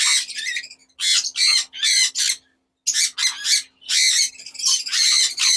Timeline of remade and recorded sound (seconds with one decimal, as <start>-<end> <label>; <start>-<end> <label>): 0.0-5.6 recorded